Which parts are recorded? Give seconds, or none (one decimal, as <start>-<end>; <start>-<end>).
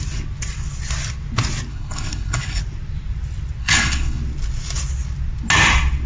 0.0-1.7; 2.6-3.6; 4.2-6.1